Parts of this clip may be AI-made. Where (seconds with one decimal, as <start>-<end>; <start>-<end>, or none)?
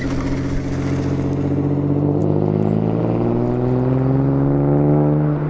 none